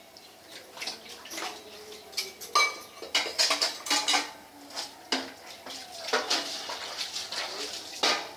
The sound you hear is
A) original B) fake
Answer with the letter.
A